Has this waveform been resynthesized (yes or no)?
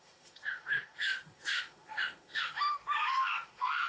yes